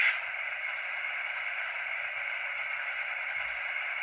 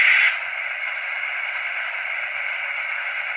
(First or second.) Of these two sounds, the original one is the second